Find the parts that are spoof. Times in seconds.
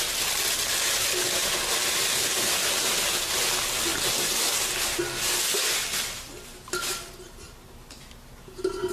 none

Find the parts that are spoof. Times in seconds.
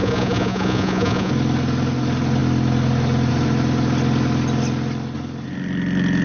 0.0-1.3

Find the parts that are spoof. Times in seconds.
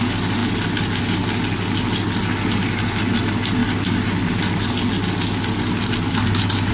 none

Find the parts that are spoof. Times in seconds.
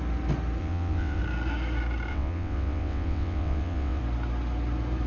0.6-1.2; 2.1-4.0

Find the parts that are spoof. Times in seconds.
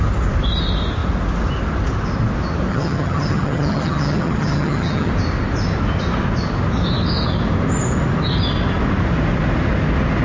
2.7-5.1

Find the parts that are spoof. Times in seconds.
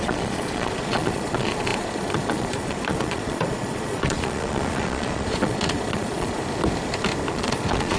0.0-6.4; 7.3-8.0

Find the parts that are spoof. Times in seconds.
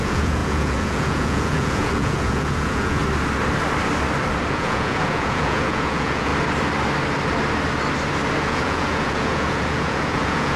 0.0-3.0; 4.5-6.3; 8.4-10.6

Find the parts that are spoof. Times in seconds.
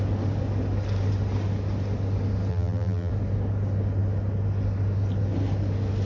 2.5-3.1